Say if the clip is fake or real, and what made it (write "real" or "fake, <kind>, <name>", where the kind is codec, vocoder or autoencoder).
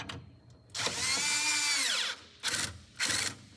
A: real